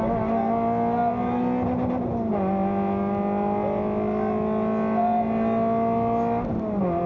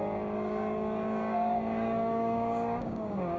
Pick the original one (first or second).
first